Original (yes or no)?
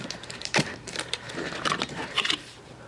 no